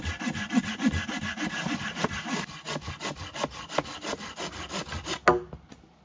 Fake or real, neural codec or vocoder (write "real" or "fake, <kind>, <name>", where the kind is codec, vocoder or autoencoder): real